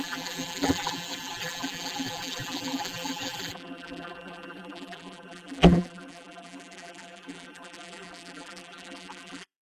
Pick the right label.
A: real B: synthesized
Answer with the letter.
B